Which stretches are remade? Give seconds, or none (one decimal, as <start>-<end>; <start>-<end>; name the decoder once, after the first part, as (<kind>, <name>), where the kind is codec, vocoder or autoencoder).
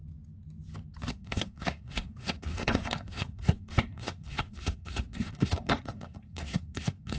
1.1-7.2 (codec, SNAC)